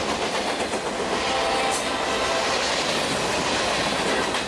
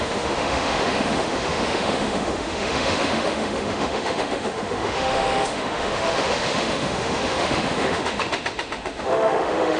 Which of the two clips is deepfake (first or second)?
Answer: second